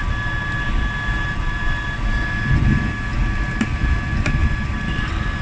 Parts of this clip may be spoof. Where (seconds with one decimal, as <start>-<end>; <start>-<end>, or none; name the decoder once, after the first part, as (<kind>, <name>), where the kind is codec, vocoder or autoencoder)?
4.4-4.9 (vocoder, BigVGAN v2)